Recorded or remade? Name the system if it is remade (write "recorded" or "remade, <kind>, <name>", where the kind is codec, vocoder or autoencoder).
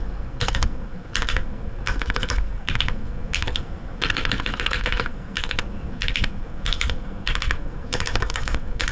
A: remade, codec, SNAC